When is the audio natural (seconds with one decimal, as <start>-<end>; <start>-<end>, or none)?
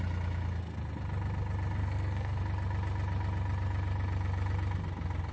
0.0-1.8; 2.4-5.3